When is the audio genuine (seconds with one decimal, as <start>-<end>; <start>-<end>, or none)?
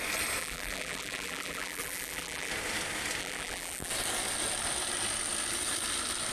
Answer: 0.0-0.4; 2.5-3.2; 3.9-6.3